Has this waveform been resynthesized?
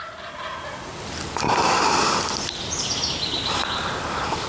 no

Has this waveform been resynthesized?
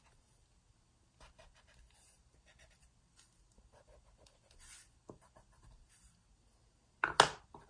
no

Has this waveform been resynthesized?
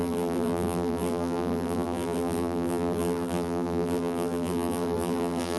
yes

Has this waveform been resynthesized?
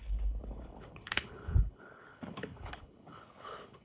yes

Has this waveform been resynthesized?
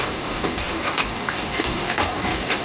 yes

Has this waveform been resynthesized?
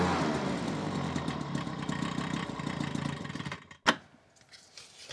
no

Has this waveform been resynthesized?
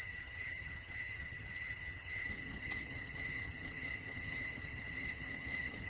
yes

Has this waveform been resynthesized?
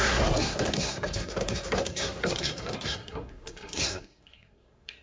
yes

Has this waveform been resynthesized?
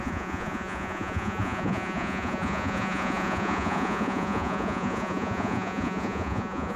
yes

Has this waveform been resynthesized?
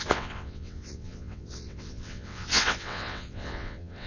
yes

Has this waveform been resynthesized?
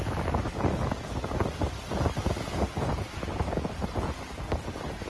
no